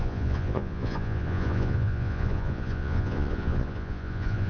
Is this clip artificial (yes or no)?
yes